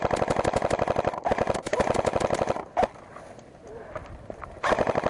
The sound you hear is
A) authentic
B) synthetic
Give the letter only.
A